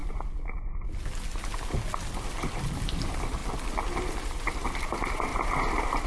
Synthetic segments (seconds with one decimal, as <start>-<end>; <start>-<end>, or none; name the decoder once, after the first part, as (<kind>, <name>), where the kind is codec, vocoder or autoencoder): 2.7-3.4 (vocoder, BigVGAN v2); 4.8-6.1